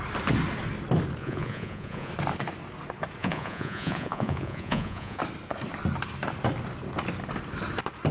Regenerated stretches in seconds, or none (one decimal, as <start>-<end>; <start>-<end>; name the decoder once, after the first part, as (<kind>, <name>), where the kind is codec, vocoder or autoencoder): 1.2-2.1 (vocoder, Vocos); 3.2-5.2